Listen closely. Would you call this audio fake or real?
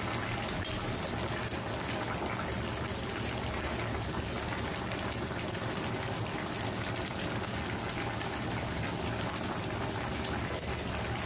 real